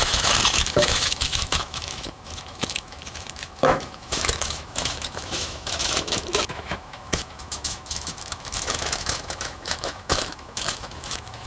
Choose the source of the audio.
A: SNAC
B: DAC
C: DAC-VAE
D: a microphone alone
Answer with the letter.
C